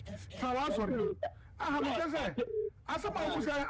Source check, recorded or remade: remade